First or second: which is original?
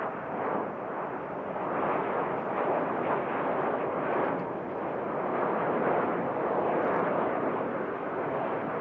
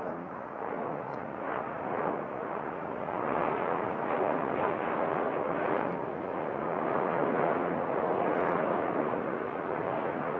first